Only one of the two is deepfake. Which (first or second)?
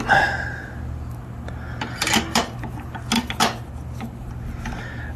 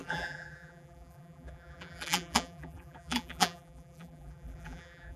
second